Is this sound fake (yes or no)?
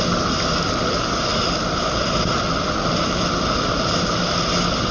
no